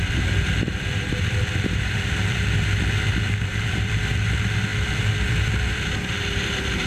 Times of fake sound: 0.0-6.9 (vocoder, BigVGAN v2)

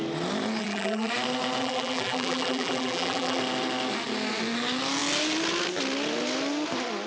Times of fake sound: 0.6-1.1 (vocoder, BigVGAN v2); 1.6-3.4

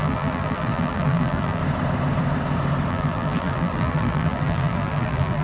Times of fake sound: 0.0-1.6 (vocoder, BigVGAN v2); 2.9-5.4

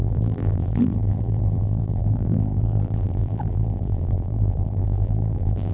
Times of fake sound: 0.0-5.7 (vocoder, BigVGAN v2)

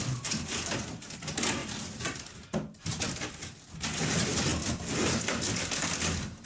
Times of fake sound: 1.6-2.5 (vocoder, BigVGAN v2)